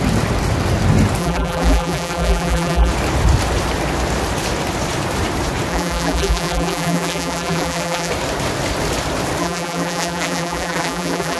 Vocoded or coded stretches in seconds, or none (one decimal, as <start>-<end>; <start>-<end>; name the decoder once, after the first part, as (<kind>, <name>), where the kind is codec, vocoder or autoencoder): 1.2-2.9 (vocoder, BigVGAN v2); 5.7-8.1; 9.4-11.4